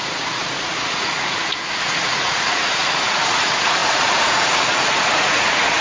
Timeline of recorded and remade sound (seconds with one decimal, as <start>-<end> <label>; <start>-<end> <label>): 0.0-5.8 remade